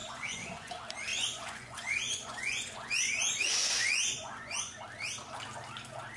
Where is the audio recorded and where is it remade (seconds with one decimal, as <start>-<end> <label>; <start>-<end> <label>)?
0.0-0.7 remade; 0.7-1.1 recorded; 1.1-4.8 remade; 4.8-6.2 recorded